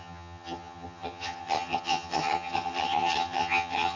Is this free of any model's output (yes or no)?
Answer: no